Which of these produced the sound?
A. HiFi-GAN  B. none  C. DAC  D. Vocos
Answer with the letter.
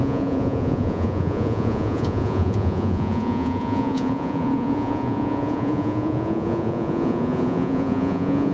D